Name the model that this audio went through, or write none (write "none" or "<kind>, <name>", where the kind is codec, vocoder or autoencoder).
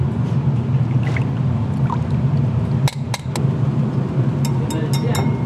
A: none